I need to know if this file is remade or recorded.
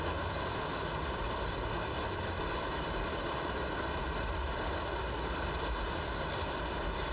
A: remade